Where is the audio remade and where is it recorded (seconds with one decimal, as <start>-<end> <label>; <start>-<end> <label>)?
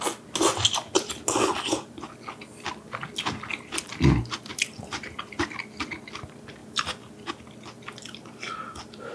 0.0-4.5 recorded; 4.5-5.4 remade; 5.4-6.6 recorded; 6.6-7.3 remade; 7.3-9.1 recorded